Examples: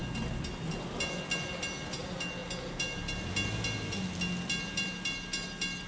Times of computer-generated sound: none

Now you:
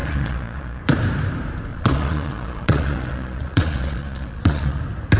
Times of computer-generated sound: 0.0-0.8 (vocoder, Vocos); 1.7-4.8

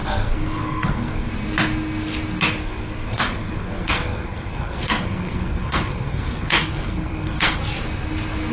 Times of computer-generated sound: 0.0-1.3 (codec, SNAC); 2.6-7.6

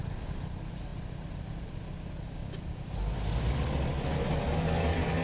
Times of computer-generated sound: none

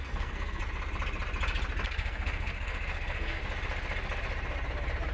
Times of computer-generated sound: 0.0-0.6 (codec, SNAC); 1.9-3.4

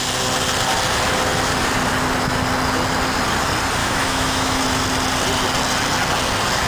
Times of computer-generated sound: 3.8-4.6 (autoencoder, DAC-VAE)

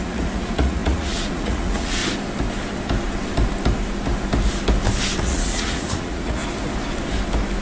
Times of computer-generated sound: 0.0-2.0 (vocoder, Vocos); 5.2-6.4